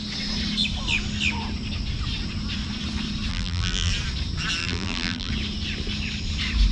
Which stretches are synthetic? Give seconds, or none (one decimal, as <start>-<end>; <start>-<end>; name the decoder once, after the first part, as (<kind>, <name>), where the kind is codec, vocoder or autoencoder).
3.3-3.9 (vocoder, BigVGAN v2); 4.6-5.3